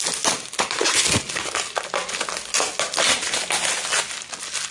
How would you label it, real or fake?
real